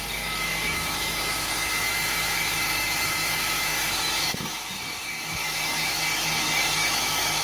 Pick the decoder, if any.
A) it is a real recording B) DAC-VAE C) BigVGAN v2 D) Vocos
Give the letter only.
B